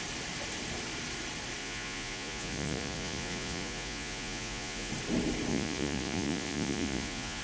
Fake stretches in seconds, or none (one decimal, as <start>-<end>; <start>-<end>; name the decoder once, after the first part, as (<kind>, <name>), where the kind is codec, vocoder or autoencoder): 1.6-4.9 (vocoder, Vocos); 5.5-7.4